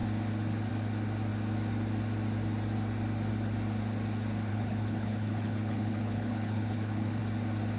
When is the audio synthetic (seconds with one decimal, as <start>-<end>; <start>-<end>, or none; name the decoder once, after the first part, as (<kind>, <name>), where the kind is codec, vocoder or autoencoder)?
4.5-7.2 (codec, HILCodec)

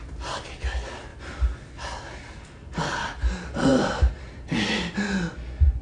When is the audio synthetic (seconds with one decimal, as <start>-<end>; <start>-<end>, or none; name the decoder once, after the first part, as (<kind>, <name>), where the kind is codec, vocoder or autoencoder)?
none

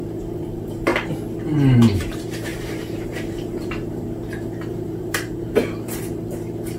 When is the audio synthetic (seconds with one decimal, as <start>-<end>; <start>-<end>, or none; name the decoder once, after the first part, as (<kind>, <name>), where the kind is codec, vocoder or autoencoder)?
0.0-0.9 (vocoder, BigVGAN v2); 2.0-6.8

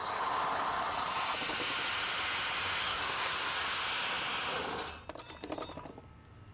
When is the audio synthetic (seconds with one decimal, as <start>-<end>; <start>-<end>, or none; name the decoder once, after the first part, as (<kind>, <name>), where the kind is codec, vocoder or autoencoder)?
2.8-3.5 (codec, SNAC)

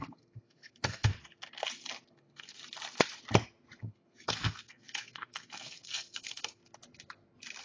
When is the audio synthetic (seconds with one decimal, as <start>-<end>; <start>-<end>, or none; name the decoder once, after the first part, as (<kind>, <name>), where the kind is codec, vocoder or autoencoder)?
0.0-1.1 (codec, SNAC); 2.1-2.6; 3.8-6.6

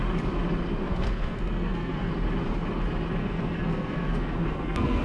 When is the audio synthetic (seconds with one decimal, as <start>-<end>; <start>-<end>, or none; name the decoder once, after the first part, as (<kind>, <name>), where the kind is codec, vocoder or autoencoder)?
0.9-2.1 (codec, SNAC); 3.2-5.0

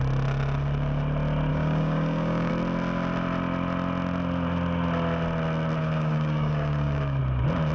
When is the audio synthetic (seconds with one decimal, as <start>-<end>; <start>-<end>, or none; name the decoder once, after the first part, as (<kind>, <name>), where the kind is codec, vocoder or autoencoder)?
1.5-2.5 (codec, DAC); 5.8-7.2

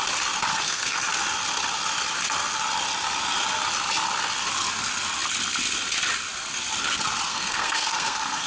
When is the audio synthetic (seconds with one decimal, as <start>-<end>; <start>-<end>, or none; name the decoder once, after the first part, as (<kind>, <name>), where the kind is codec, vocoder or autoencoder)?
0.5-1.0 (codec, SNAC); 7.3-8.5